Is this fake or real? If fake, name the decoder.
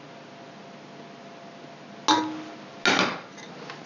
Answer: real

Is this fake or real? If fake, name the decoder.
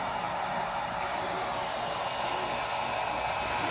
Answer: real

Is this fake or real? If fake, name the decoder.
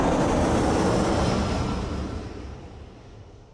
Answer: real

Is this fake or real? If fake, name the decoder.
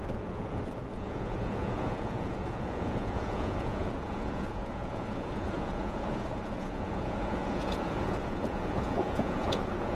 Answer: fake, vocoder, Vocos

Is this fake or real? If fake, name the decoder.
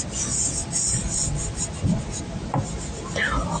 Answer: real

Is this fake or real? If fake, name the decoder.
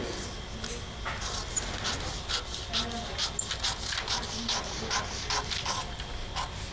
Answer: real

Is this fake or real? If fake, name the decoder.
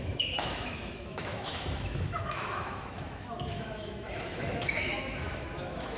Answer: fake, autoencoder, DAC-VAE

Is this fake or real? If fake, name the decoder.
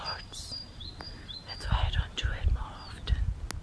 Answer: real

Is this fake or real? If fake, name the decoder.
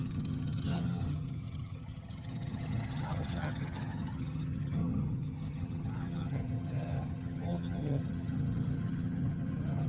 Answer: fake, vocoder, HiFi-GAN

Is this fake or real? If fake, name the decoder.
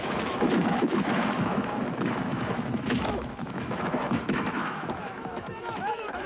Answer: fake, autoencoder, DAC-VAE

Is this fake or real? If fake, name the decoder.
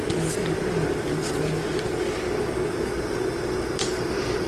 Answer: real